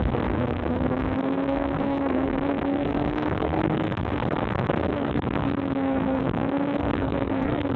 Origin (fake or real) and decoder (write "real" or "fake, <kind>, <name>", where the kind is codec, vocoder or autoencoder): fake, codec, SNAC